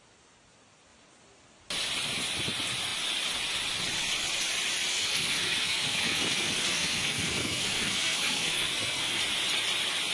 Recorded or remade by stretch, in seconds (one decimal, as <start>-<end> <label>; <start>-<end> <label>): 0.0-4.9 recorded; 4.9-9.2 remade; 9.2-10.1 recorded